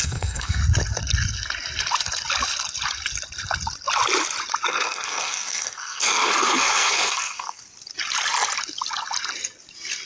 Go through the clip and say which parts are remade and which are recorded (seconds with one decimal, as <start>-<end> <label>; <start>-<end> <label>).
0.0-0.6 remade; 0.6-4.7 recorded; 4.7-7.6 remade; 7.6-10.1 recorded